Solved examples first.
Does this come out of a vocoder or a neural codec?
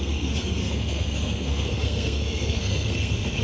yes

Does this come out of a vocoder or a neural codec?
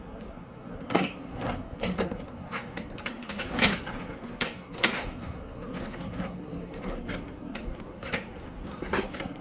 yes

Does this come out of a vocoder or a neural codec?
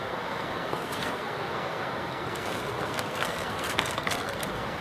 yes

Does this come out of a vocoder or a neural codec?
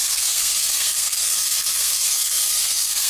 yes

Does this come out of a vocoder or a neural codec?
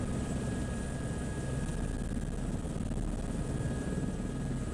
no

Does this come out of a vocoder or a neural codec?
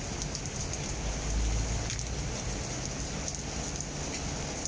no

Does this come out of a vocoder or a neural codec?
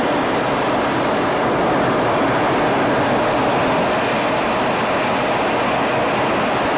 no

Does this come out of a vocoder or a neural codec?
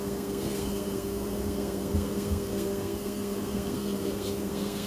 yes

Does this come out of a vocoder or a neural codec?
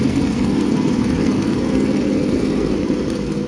yes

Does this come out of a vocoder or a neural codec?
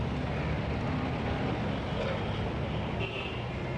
no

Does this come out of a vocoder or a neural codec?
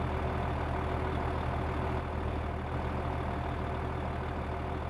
no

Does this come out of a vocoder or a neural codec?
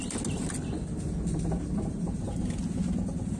no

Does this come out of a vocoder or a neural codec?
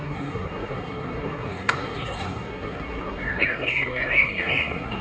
yes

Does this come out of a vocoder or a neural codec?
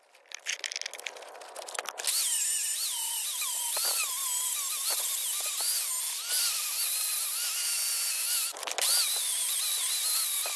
no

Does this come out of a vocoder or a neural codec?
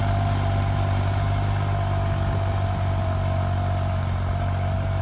no